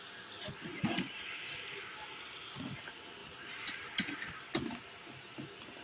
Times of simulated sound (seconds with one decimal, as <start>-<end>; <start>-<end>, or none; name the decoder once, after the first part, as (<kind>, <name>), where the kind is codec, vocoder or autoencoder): 0.7-1.5 (vocoder, BigVGAN v2); 3.2-3.7

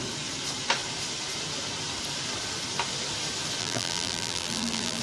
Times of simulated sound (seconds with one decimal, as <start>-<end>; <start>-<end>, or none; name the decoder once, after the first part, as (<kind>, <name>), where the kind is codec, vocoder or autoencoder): 3.6-5.0 (vocoder, BigVGAN v2)

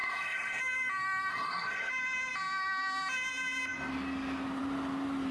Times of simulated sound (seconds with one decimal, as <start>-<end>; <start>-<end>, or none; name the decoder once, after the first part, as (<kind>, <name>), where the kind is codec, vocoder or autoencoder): 0.0-0.6 (codec, SNAC); 1.3-1.9

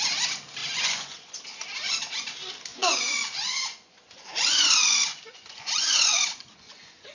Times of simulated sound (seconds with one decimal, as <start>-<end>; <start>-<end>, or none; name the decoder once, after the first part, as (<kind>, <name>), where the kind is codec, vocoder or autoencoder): 0.6-1.4 (vocoder, Vocos); 2.7-7.1